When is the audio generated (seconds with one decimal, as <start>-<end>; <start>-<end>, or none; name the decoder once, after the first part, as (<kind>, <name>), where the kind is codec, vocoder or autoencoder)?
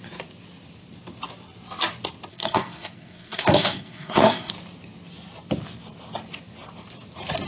2.3-4.5 (codec, SNAC)